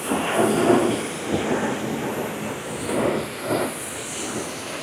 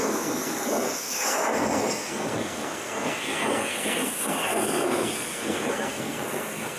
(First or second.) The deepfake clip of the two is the second